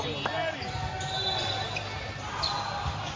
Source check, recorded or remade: recorded